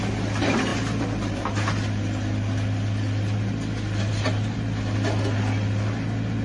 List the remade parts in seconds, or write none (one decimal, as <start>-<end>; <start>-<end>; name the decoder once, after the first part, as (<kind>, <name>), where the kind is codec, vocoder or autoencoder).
none